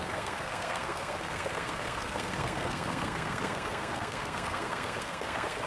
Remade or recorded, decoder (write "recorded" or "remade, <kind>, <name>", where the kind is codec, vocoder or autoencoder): remade, codec, SNAC